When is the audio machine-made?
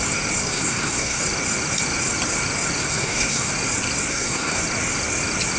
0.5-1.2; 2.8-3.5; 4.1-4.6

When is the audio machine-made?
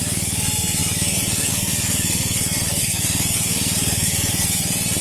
0.0-5.0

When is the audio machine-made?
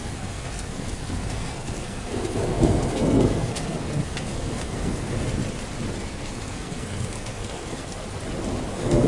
0.0-5.4; 6.0-8.0; 8.7-9.1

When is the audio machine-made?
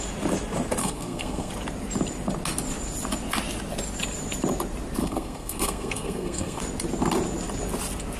0.8-1.5; 5.0-6.6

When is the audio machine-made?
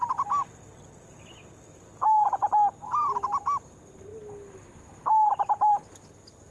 none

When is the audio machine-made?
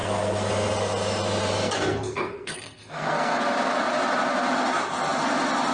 0.0-0.5; 1.6-3.4